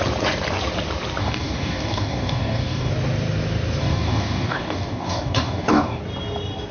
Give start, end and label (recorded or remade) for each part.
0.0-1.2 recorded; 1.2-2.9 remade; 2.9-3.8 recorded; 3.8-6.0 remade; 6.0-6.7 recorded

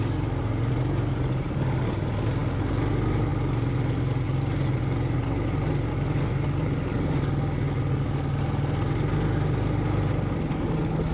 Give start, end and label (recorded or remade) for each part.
0.0-11.1 recorded

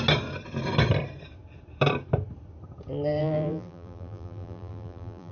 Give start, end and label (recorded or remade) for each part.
0.0-3.2 recorded; 3.2-5.3 remade

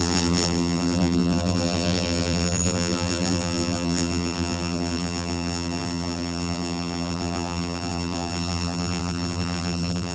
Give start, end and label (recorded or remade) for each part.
0.0-10.1 remade

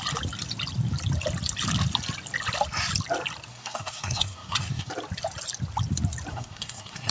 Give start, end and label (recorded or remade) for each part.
0.0-3.5 recorded; 3.5-4.9 remade; 4.9-6.3 recorded; 6.3-7.1 remade

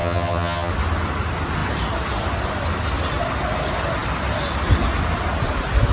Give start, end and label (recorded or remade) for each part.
0.0-0.7 remade; 0.7-5.9 recorded

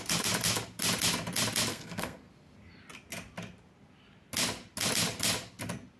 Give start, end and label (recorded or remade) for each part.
0.0-1.7 recorded; 1.7-2.3 remade; 2.3-6.0 recorded

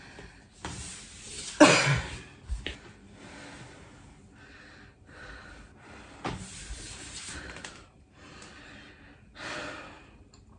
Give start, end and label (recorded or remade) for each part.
0.0-6.5 recorded; 6.5-8.4 remade; 8.4-10.6 recorded